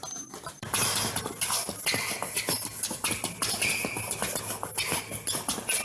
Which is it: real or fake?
real